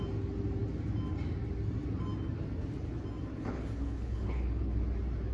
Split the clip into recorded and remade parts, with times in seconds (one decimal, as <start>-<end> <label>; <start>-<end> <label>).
0.0-3.3 recorded; 3.3-4.8 remade; 4.8-5.3 recorded